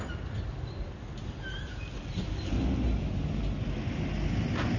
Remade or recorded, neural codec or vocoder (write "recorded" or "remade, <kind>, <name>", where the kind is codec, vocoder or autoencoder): recorded